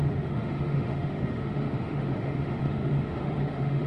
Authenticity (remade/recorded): remade